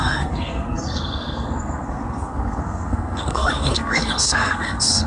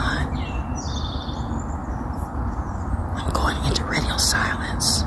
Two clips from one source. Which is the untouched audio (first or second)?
second